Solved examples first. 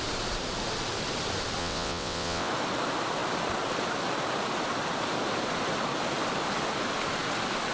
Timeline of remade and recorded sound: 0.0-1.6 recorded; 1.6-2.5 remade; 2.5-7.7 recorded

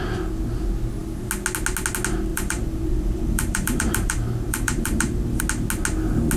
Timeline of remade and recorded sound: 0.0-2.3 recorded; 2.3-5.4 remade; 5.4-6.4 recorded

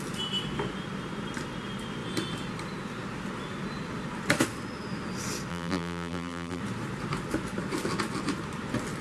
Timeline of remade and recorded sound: 0.0-5.5 recorded; 5.5-6.6 remade; 6.6-9.0 recorded

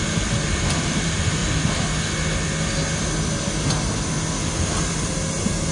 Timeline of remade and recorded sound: 0.0-1.4 remade; 1.4-4.8 recorded; 4.8-5.7 remade